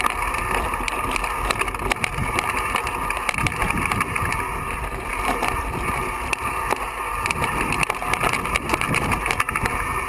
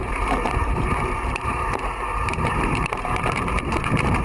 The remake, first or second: second